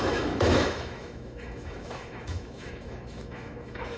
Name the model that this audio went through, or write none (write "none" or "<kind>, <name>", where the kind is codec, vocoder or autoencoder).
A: autoencoder, DAC-VAE